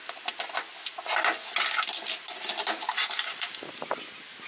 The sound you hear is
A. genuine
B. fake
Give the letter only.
A